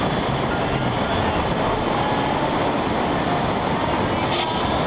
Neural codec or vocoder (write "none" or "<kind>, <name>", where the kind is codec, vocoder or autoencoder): none